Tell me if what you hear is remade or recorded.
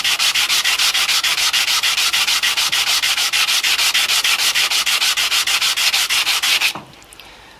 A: recorded